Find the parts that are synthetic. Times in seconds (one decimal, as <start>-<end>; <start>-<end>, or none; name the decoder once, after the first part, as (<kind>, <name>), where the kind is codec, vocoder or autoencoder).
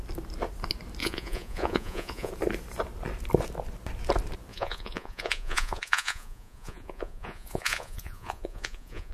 1.0-2.3 (vocoder, Vocos); 4.5-9.1